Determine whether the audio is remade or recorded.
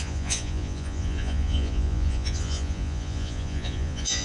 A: remade